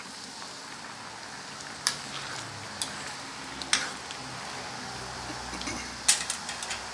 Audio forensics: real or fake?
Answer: real